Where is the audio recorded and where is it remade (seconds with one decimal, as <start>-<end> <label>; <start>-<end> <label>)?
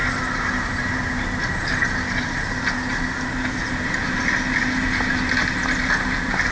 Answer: 0.0-6.5 recorded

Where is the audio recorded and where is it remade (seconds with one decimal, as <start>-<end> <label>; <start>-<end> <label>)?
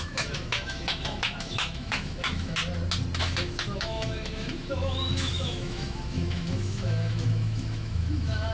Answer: 0.0-2.6 remade; 2.6-3.2 recorded; 3.2-8.5 remade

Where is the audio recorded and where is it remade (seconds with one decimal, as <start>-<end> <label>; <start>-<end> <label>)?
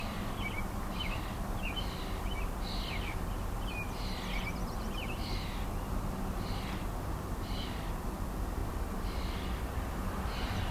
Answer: 0.0-10.7 recorded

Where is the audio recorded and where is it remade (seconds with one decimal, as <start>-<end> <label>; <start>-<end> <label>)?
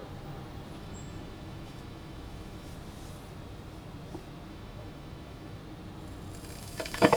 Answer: 0.0-0.8 recorded; 0.8-2.7 remade; 2.7-4.5 recorded; 4.5-5.6 remade; 5.6-6.6 recorded; 6.6-7.2 remade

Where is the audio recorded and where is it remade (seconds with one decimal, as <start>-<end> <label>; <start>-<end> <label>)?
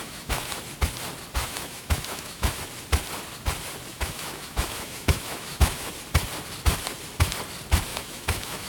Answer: 0.0-0.6 remade; 0.6-1.4 recorded; 1.4-2.6 remade; 2.6-3.9 recorded; 3.9-5.9 remade; 5.9-7.9 recorded; 7.9-8.7 remade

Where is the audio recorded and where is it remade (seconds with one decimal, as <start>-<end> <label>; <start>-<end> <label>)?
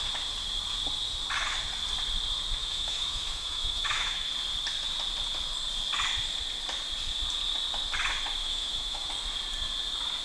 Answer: 0.0-2.6 recorded; 2.6-4.3 remade; 4.3-8.4 recorded; 8.4-9.1 remade; 9.1-10.2 recorded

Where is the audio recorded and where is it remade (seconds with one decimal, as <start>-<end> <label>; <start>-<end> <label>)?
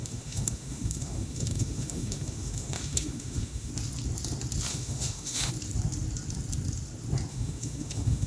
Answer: 0.0-3.7 remade; 3.7-4.7 recorded; 4.7-5.5 remade; 5.5-7.3 recorded; 7.3-8.3 remade